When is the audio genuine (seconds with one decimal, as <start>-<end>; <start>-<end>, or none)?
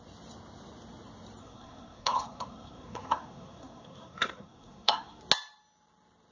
0.0-1.4; 5.2-6.3